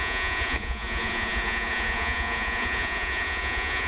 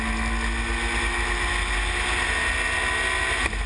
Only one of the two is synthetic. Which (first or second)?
first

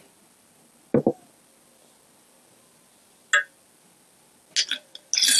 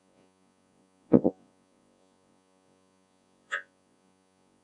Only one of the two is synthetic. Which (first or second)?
second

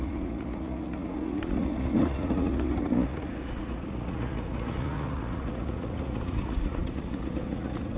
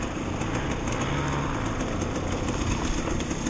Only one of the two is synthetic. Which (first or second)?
first